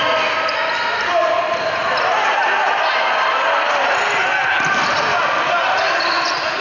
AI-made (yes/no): no